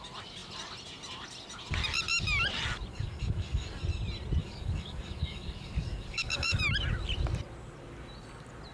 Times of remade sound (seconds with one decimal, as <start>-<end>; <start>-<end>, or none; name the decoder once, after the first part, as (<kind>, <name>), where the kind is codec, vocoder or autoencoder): 2.9-3.8 (codec, DAC); 4.4-6.6